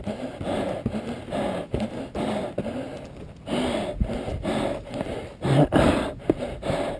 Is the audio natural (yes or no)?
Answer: yes